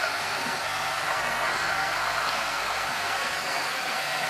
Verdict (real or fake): fake